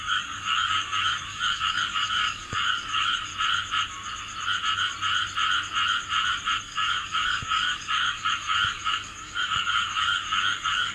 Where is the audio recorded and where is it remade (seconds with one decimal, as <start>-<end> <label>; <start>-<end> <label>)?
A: 0.0-3.3 remade; 3.3-6.6 recorded; 6.6-10.9 remade